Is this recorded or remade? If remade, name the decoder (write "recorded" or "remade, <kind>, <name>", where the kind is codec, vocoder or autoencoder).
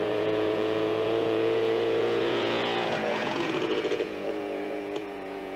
remade, vocoder, Vocos